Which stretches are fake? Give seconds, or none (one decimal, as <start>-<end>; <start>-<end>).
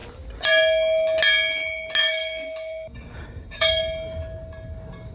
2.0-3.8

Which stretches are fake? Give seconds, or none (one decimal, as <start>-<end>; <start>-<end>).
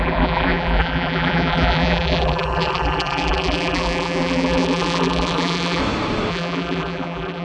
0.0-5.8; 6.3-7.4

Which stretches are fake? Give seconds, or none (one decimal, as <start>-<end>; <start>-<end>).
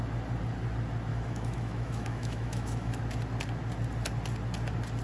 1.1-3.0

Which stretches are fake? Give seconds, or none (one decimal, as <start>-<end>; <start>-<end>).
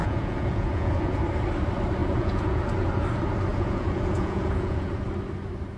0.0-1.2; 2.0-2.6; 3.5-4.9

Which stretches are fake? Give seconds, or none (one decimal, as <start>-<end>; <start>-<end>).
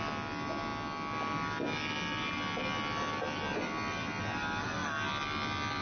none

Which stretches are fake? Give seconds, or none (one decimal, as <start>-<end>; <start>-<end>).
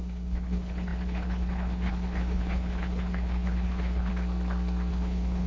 0.0-4.1; 4.9-5.5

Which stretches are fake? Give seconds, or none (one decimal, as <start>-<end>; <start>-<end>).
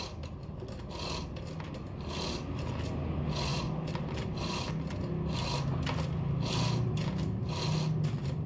none